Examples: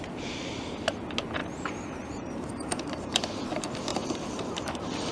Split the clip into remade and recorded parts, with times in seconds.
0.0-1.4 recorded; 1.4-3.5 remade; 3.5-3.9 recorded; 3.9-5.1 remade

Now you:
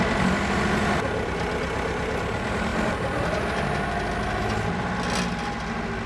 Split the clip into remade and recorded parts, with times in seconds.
0.0-6.1 recorded

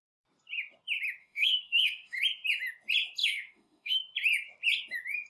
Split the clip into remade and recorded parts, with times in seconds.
0.0-1.2 recorded; 1.2-2.2 remade; 2.2-3.2 recorded; 3.2-4.0 remade; 4.0-5.3 recorded

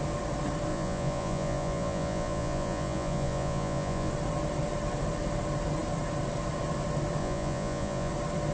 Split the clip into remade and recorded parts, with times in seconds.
0.0-0.7 recorded; 0.7-4.1 remade; 4.1-7.2 recorded; 7.2-8.1 remade; 8.1-8.5 recorded

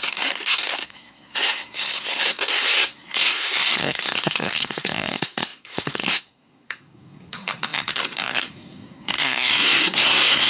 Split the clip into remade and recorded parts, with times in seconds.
0.0-10.5 remade

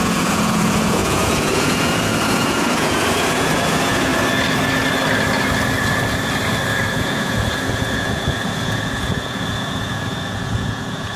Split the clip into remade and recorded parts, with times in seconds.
0.0-4.1 remade; 4.1-6.9 recorded; 6.9-11.2 remade

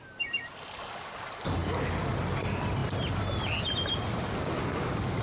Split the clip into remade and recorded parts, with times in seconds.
0.0-5.2 recorded